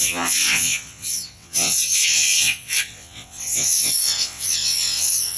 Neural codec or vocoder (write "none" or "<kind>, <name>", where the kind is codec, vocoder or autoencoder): vocoder, WaveNeXt